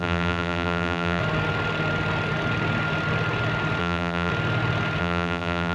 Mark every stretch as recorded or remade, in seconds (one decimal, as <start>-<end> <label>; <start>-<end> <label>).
0.0-1.2 remade; 1.2-3.8 recorded; 3.8-4.3 remade; 4.3-5.0 recorded; 5.0-5.7 remade